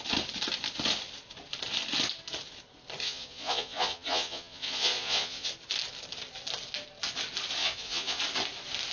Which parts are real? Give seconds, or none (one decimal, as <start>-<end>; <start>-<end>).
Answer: 0.0-3.0; 5.5-7.6; 8.2-8.9

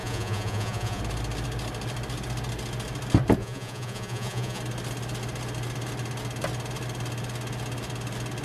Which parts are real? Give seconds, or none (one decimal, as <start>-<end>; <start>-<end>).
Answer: 1.0-3.4; 4.6-8.4

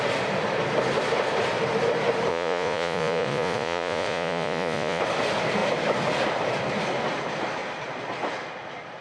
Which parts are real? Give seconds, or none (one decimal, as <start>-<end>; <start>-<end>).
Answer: 0.0-2.3; 5.0-9.0

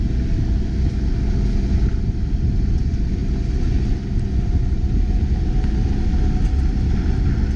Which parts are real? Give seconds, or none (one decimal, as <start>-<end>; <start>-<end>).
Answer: 0.0-7.6

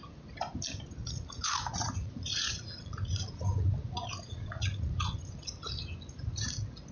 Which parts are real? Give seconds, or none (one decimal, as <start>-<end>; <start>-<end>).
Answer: 0.0-1.0; 5.1-6.9